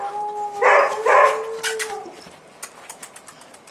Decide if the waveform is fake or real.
real